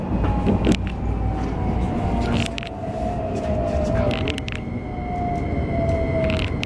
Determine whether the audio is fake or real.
real